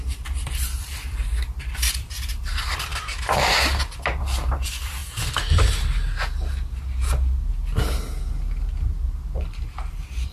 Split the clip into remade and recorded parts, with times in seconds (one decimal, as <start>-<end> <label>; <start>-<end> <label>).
0.0-2.9 remade; 2.9-4.2 recorded; 4.2-5.0 remade; 5.0-9.9 recorded; 9.9-10.3 remade